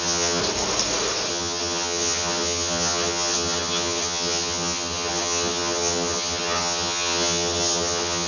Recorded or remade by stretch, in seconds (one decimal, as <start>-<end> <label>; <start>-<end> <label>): 0.0-0.4 remade; 0.4-1.3 recorded; 1.3-8.3 remade